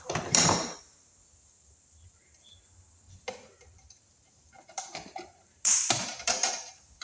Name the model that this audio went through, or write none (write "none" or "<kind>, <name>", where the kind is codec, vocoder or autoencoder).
vocoder, BigVGAN v2